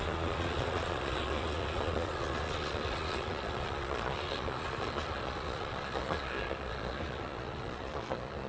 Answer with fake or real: fake